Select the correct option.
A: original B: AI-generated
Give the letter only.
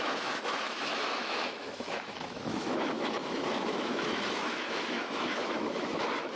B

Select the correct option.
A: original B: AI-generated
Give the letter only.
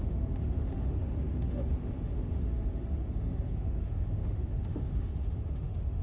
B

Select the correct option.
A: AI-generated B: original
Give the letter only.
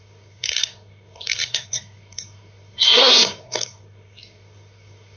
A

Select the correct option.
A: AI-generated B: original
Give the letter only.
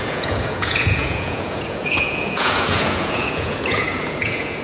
A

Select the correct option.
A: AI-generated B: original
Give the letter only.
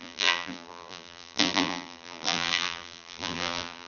A